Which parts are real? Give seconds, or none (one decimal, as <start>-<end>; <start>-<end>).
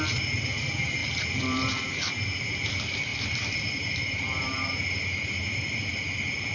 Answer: 0.0-1.0; 1.7-3.1; 5.9-6.5